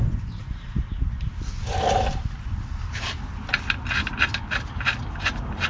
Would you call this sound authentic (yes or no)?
yes